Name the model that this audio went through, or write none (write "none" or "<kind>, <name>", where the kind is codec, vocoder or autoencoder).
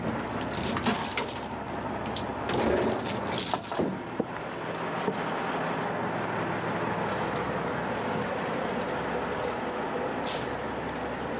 none